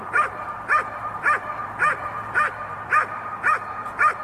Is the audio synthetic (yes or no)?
yes